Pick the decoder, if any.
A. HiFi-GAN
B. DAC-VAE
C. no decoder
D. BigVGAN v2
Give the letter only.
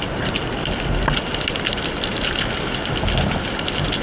C